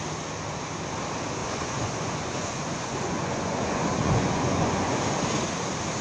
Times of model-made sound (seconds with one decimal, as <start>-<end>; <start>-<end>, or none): 1.4-5.0

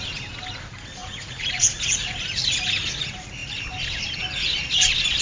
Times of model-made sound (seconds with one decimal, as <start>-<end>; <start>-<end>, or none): 1.0-2.2

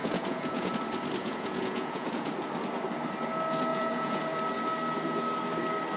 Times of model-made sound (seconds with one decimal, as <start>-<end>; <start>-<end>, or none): 0.0-0.7; 1.2-2.3; 3.7-4.2

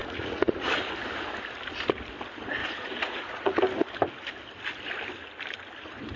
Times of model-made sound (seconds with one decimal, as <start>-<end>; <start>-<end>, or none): 0.0-0.7; 2.6-3.6